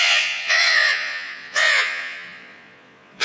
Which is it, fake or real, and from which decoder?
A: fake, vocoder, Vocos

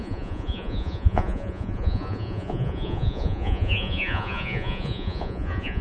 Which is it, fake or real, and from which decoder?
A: fake, vocoder, Vocos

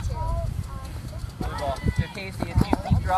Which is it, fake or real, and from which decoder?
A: real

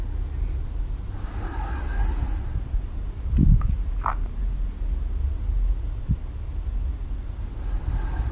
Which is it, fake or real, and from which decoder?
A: real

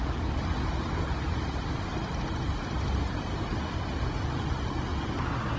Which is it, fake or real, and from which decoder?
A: real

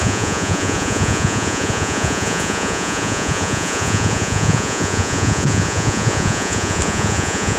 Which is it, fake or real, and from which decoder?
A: fake, vocoder, Vocos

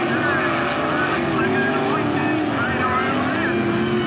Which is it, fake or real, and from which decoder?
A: real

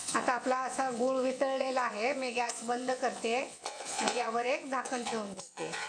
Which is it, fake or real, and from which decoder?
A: fake, vocoder, Vocos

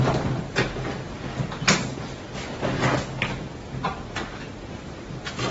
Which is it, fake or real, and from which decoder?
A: real